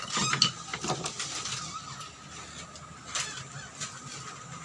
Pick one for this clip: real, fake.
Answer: real